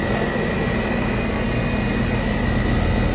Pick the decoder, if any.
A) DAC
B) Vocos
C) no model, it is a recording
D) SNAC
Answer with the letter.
C